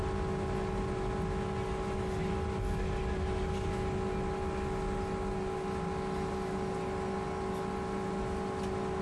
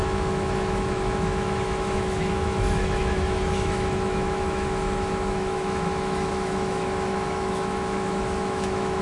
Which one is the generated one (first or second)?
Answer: second